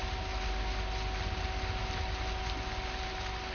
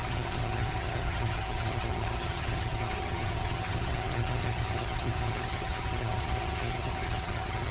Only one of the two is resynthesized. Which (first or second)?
second